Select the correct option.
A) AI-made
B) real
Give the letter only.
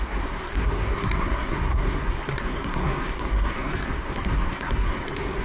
A